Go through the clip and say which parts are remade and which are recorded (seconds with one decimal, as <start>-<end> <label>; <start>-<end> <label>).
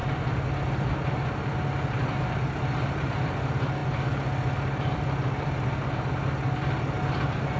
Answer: 0.0-7.6 recorded